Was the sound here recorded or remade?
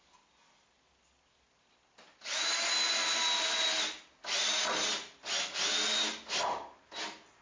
recorded